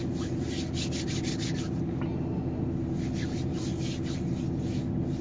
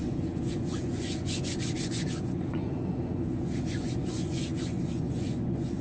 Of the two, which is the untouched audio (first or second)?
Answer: first